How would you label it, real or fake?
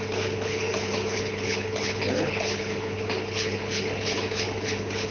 fake